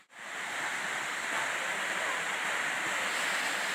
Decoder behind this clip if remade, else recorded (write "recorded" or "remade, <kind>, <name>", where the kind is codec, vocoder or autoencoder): recorded